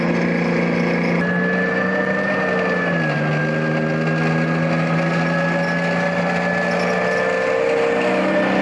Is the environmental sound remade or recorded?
recorded